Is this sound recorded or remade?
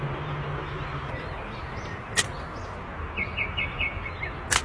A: recorded